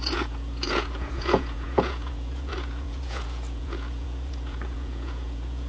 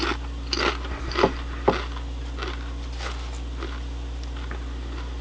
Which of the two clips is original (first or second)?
second